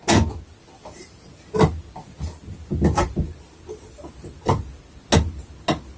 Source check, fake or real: real